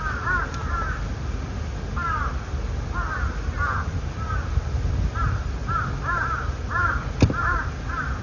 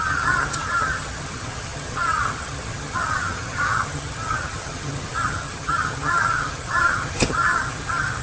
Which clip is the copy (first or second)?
second